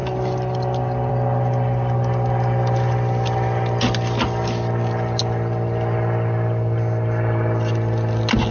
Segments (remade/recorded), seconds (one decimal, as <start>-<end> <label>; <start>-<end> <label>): 0.0-8.5 recorded